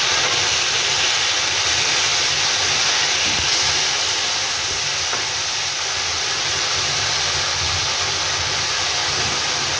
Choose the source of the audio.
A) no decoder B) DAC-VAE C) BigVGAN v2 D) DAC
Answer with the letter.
A